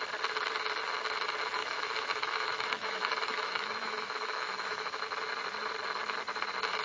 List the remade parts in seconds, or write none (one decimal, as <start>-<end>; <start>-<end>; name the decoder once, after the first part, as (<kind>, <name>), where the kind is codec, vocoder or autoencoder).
1.6-5.0 (autoencoder, DAC-VAE)